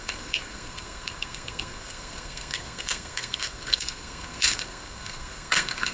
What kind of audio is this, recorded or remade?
remade